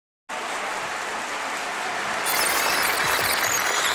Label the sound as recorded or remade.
recorded